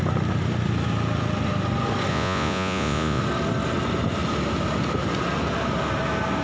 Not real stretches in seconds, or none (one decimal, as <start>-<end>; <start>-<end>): 2.1-3.2